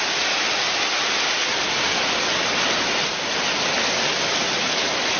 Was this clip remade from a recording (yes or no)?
no